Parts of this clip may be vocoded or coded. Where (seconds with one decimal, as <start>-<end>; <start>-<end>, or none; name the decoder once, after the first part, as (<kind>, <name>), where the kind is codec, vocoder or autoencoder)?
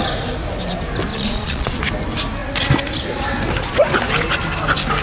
1.1-1.8 (vocoder, Vocos)